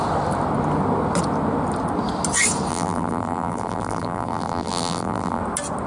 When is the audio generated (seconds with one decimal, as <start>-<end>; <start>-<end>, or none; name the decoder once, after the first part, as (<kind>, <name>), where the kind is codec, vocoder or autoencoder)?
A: 2.7-5.4 (vocoder, BigVGAN v2)